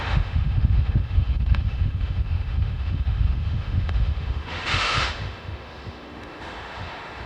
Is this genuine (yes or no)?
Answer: no